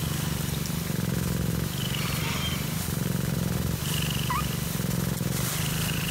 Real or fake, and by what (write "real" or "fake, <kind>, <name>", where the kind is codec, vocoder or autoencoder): real